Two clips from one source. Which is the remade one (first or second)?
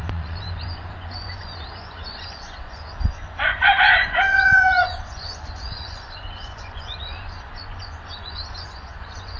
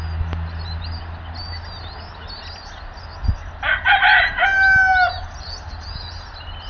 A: first